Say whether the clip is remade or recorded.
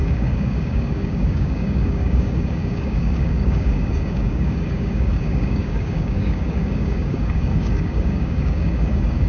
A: remade